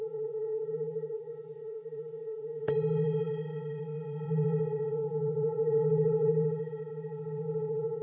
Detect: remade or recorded remade